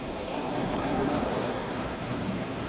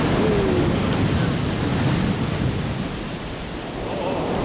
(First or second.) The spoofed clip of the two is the first